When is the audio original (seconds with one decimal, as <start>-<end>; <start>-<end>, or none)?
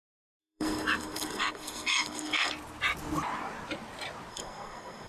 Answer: 0.0-0.4; 2.5-4.3